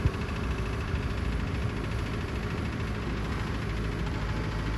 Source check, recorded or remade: recorded